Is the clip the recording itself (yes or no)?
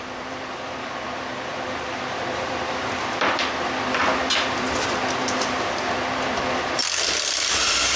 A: no